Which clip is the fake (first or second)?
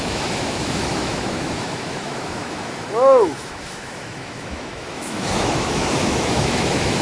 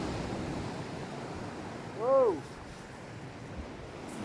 first